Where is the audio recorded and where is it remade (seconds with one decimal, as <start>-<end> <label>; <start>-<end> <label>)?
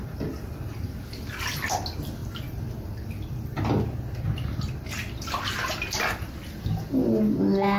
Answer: 0.0-7.8 recorded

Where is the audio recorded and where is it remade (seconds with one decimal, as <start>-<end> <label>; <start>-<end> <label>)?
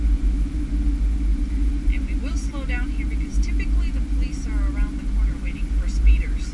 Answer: 0.0-6.5 recorded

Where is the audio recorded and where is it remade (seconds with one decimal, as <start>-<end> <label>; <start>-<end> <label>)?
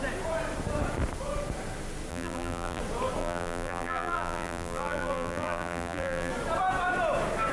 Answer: 0.0-2.1 recorded; 2.1-2.8 remade; 2.8-3.2 recorded; 3.2-6.3 remade; 6.3-7.5 recorded